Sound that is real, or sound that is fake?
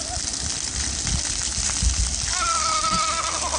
real